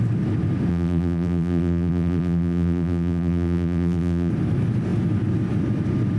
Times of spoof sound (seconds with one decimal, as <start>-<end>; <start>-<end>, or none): 0.7-4.3